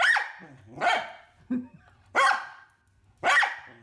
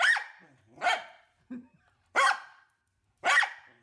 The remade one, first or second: second